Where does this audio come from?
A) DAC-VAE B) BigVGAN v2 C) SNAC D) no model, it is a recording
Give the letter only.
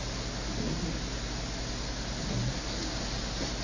D